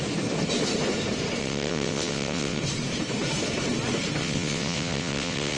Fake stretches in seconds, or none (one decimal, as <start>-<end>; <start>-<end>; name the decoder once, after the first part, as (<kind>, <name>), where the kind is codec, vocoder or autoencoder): 1.4-2.6 (vocoder, WaveNeXt); 4.2-5.6